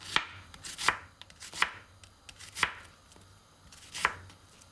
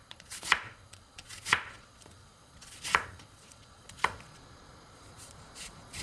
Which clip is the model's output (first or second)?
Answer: second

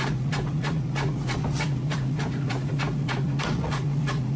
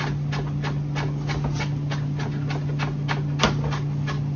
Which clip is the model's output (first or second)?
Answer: first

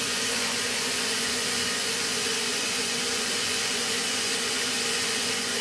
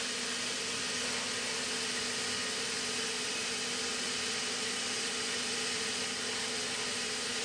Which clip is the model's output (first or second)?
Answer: first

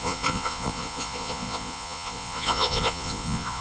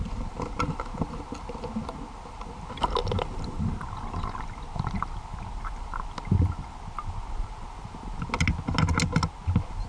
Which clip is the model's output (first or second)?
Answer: first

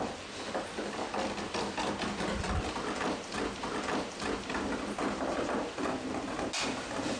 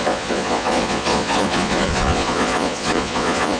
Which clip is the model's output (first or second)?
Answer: second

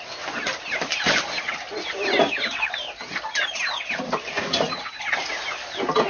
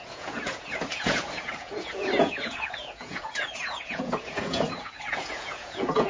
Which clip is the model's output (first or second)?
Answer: second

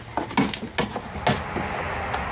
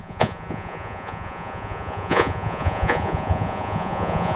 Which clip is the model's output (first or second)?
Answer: second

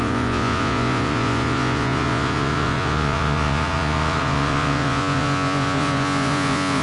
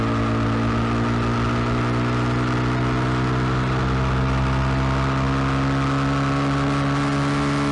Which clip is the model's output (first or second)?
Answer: first